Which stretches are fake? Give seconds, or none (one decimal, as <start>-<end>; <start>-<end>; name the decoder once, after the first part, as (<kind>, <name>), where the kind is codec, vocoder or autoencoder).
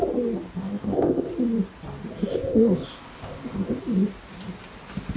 0.6-1.3 (codec, ZipCodec); 2.3-3.8